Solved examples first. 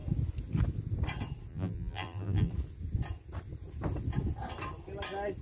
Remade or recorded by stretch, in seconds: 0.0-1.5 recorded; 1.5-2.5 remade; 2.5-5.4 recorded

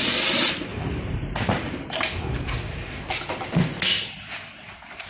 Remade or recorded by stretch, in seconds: 0.0-0.7 recorded; 0.7-3.0 remade; 3.0-5.1 recorded

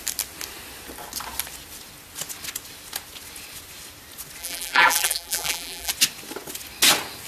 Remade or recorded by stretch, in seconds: 0.0-4.4 recorded; 4.4-5.9 remade; 5.9-7.3 recorded

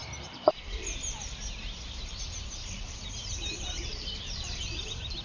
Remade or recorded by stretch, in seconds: 0.0-1.8 recorded; 1.8-5.2 remade

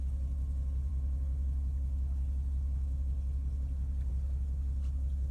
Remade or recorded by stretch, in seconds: 0.0-5.3 recorded

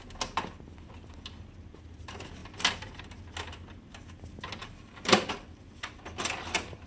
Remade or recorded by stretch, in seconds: 0.0-4.6 recorded; 4.6-5.6 remade; 5.6-6.9 recorded

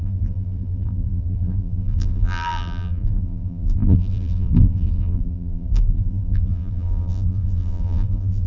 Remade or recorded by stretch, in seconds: 0.0-8.5 remade